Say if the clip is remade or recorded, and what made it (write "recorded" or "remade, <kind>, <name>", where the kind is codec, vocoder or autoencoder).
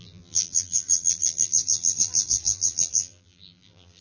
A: remade, vocoder, BigVGAN v2